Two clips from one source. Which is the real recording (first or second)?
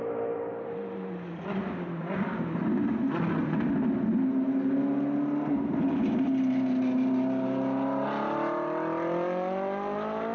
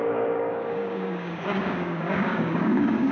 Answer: first